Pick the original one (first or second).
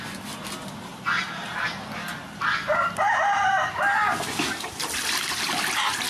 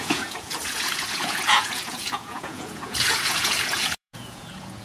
first